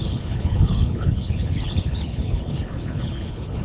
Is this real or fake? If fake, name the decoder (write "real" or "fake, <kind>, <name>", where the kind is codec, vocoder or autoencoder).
fake, codec, HILCodec